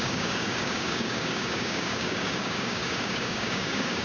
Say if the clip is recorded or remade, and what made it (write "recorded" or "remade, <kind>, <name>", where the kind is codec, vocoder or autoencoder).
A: remade, codec, DAC